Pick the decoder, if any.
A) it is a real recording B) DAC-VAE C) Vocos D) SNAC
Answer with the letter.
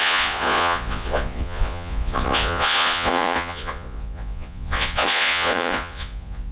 C